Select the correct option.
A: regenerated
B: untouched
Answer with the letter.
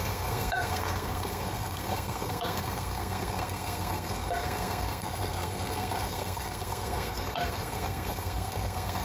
A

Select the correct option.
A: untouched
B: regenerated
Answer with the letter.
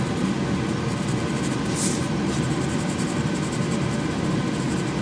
A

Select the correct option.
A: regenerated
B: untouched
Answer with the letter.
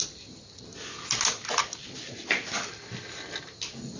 B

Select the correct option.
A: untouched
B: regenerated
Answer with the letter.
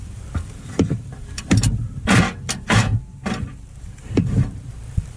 B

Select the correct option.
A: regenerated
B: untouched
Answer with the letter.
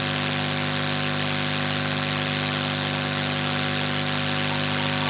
B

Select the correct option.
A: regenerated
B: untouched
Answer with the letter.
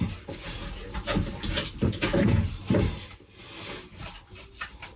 B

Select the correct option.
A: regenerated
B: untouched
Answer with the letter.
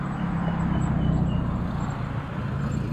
B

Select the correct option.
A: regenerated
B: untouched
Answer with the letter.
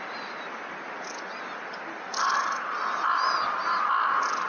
B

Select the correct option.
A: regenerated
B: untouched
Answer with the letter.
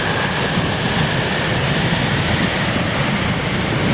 B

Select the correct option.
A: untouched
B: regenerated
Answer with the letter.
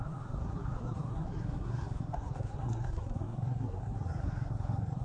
B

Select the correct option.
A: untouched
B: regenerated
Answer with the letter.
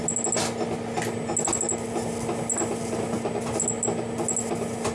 A